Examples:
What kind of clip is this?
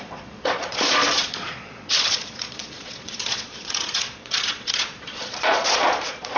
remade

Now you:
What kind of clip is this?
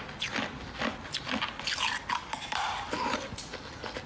recorded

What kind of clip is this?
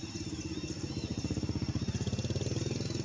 recorded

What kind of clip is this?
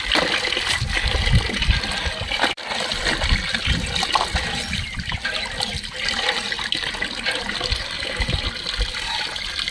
recorded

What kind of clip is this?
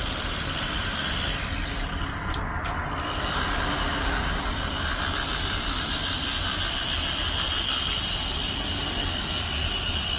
recorded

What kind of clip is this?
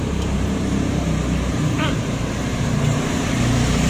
remade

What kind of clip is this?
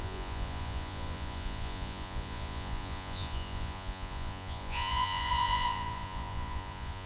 remade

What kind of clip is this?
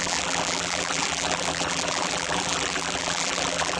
remade